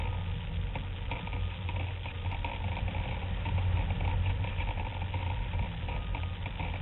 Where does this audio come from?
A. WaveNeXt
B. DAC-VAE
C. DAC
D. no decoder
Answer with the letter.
D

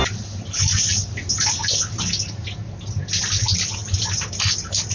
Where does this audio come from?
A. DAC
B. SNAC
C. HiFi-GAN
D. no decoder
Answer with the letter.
D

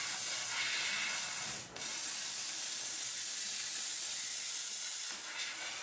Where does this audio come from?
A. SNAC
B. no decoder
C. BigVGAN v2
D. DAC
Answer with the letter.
B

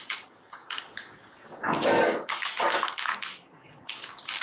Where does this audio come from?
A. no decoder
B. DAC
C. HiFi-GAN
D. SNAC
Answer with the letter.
B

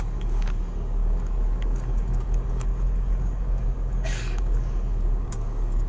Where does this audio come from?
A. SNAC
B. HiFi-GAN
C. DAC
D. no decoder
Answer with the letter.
C